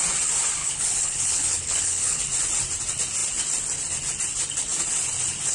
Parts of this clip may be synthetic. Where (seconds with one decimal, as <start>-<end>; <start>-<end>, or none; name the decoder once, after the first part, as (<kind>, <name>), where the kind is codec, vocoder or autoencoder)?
0.6-2.2 (codec, HILCodec)